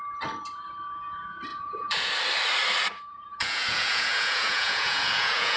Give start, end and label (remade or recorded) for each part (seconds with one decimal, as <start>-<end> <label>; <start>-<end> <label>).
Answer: 0.0-1.5 recorded; 1.5-2.1 remade; 2.1-3.1 recorded; 3.1-5.6 remade